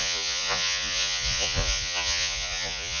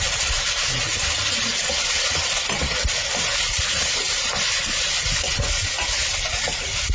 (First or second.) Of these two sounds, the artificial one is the first